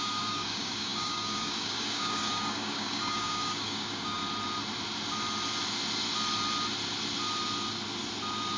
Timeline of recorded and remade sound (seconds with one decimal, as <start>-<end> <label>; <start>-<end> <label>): 0.0-4.2 remade; 4.2-8.6 recorded

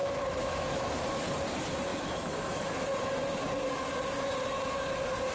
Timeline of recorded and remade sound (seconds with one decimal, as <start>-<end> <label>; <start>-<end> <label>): 0.0-0.9 remade; 0.9-1.9 recorded; 1.9-2.7 remade; 2.7-5.3 recorded

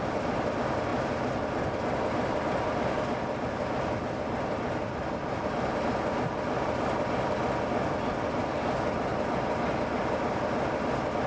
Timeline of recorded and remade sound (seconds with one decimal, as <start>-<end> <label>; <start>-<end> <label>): 0.0-11.3 recorded

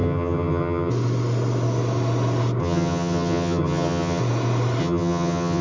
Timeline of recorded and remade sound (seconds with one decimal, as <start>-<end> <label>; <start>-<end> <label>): 0.0-0.9 remade; 0.9-2.6 recorded; 2.6-4.2 remade; 4.2-4.8 recorded; 4.8-5.6 remade

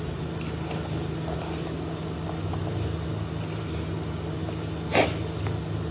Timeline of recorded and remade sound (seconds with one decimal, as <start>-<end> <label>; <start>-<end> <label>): 0.0-5.9 recorded

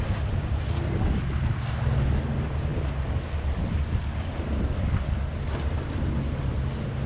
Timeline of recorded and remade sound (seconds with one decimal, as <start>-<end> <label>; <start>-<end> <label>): 0.0-7.1 recorded

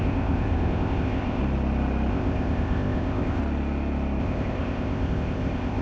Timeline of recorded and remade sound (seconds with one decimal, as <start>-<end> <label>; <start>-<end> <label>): 0.0-1.4 remade; 1.4-2.1 recorded; 2.1-3.4 remade; 3.4-4.2 recorded; 4.2-5.8 remade

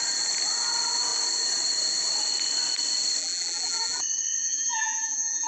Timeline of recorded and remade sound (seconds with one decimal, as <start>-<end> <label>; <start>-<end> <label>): 0.0-3.2 recorded; 3.2-4.0 remade; 4.0-4.4 recorded; 4.4-5.5 remade